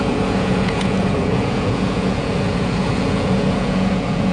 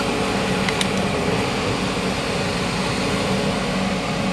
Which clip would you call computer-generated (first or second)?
first